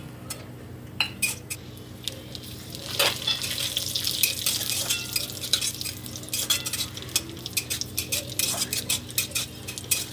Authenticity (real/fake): real